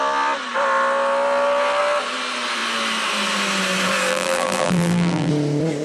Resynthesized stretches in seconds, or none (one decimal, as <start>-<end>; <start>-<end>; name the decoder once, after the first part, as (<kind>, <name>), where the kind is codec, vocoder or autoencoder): 4.1-5.3 (vocoder, BigVGAN v2)